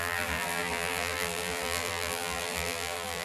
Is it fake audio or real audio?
fake